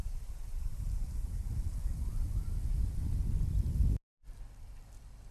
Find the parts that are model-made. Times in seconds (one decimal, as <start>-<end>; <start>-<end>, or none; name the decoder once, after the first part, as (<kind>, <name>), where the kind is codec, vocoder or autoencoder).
0.0-1.5 (vocoder, BigVGAN v2)